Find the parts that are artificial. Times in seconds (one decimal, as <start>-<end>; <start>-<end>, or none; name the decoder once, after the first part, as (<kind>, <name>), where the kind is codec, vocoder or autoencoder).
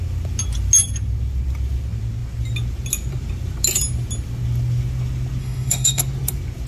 5.4-6.0 (autoencoder, DAC-VAE)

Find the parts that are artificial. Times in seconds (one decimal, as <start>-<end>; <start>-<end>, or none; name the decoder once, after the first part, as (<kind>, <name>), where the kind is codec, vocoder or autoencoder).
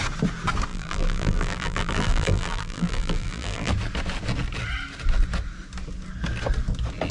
0.7-3.7 (vocoder, BigVGAN v2)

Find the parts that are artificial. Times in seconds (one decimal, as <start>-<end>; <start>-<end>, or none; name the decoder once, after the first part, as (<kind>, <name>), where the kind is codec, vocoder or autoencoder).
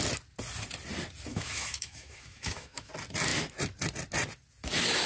1.3-2.9 (autoencoder, DAC-VAE)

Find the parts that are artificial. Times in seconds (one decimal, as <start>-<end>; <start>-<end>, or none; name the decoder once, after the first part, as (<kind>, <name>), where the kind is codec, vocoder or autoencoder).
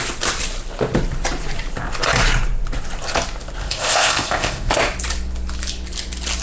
3.6-4.7 (codec, ZipCodec)